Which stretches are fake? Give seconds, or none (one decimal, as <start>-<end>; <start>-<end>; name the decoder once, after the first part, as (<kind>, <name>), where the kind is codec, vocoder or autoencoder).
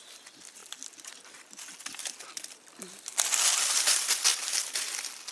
none